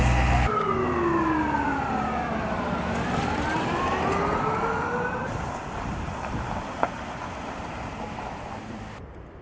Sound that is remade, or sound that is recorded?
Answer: recorded